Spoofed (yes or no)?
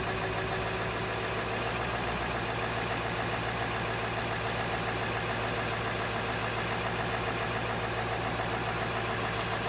no